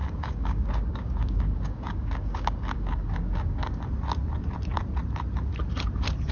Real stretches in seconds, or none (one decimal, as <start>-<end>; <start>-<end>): 3.8-6.3